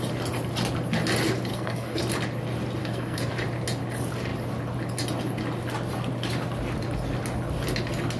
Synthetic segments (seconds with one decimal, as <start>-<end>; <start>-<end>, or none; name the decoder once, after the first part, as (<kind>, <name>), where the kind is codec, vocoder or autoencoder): 1.5-2.0 (codec, SNAC); 2.8-3.3